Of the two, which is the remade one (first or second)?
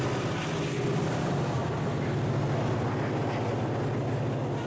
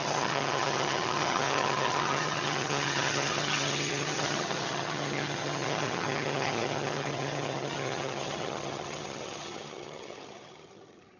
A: second